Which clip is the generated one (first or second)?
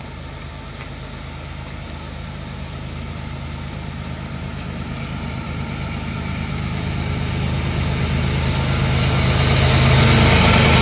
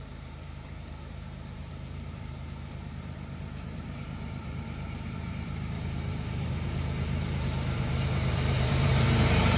second